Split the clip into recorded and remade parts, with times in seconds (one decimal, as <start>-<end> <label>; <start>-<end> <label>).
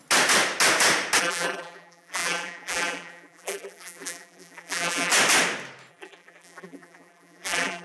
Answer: 0.0-1.2 recorded; 1.2-5.1 remade; 5.1-5.9 recorded; 5.9-7.8 remade